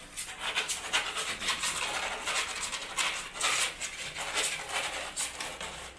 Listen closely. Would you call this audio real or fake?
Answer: real